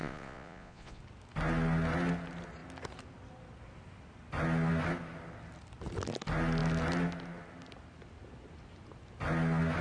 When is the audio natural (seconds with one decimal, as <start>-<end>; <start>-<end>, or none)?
1.0-9.8